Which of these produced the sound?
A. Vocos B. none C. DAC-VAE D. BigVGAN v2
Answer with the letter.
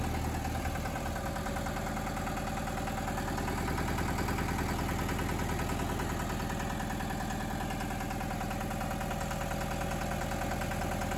B